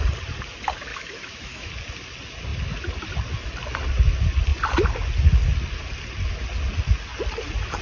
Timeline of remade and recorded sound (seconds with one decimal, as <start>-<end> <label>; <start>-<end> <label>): 0.0-0.9 recorded; 0.9-1.7 remade; 1.7-7.8 recorded